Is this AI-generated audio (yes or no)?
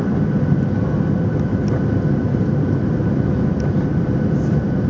no